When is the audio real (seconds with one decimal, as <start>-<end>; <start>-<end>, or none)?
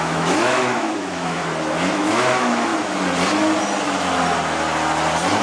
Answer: 1.4-1.9; 2.7-5.4